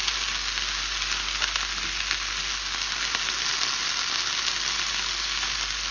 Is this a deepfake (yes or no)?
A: no